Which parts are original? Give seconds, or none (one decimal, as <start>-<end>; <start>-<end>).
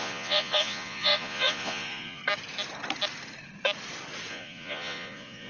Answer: 2.2-4.3